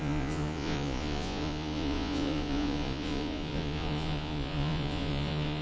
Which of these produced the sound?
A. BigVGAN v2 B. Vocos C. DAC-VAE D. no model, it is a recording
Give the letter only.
B